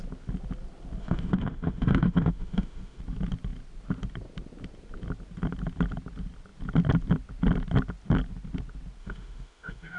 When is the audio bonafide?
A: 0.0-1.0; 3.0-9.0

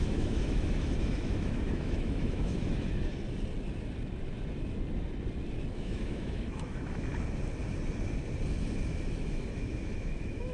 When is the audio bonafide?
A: 3.1-5.8; 7.1-9.2

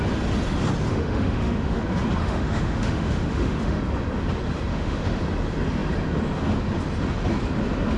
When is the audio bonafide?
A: 0.0-0.9; 1.8-2.2; 3.8-4.7; 5.2-8.0

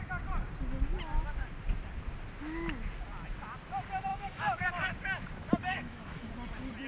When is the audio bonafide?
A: 0.0-4.1; 4.7-5.6; 6.3-6.9

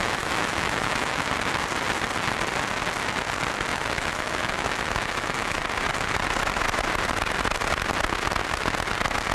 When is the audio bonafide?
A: 1.3-3.7; 5.6-9.3

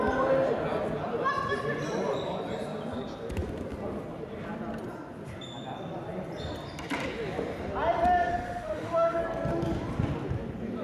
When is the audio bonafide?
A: 0.0-8.3; 9.2-10.8

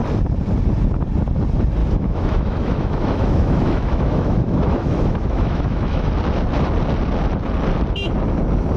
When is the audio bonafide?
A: 0.0-1.8; 6.1-8.8